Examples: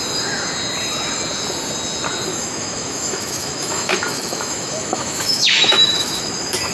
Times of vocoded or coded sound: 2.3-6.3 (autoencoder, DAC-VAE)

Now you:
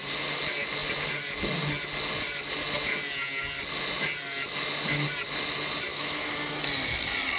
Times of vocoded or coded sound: 5.9-6.6 (autoencoder, DAC-VAE)